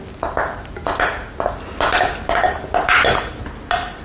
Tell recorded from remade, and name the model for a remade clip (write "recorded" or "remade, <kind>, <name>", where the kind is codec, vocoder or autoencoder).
recorded